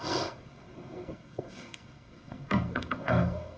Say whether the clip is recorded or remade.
remade